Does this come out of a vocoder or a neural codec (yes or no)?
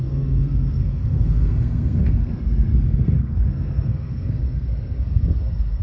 yes